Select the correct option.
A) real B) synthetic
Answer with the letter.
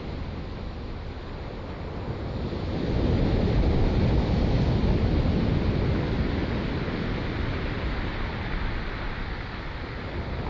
A